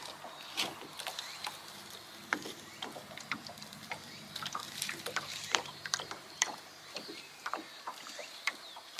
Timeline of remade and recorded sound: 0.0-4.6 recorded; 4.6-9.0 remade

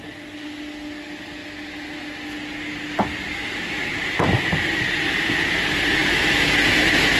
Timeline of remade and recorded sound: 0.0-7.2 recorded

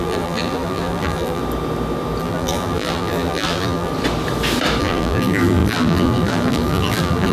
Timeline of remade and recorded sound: 0.0-1.4 remade; 1.4-2.2 recorded; 2.2-3.9 remade; 3.9-4.8 recorded; 4.8-7.3 remade

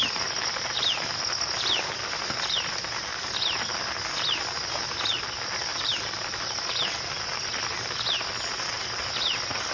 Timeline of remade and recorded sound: 0.0-5.7 recorded; 5.7-7.2 remade; 7.2-9.7 recorded